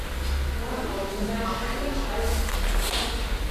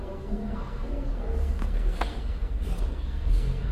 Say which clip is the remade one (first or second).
second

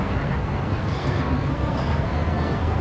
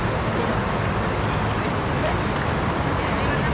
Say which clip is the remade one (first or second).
first